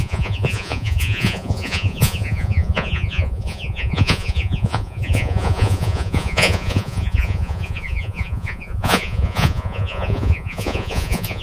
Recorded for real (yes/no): no